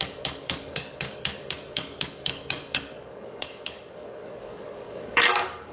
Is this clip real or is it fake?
fake